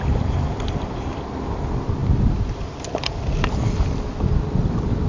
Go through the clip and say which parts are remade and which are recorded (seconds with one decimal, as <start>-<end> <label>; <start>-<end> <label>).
0.0-2.0 recorded; 2.0-3.7 remade; 3.7-5.1 recorded